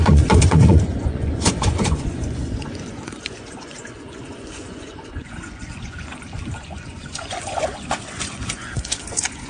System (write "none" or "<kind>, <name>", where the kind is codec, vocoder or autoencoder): vocoder, Vocos